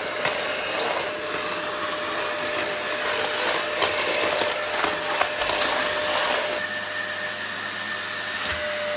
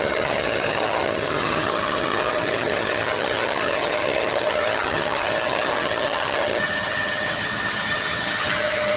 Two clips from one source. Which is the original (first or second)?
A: first